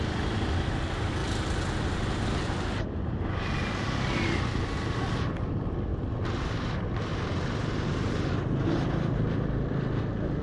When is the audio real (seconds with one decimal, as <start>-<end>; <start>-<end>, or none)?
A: 0.0-10.4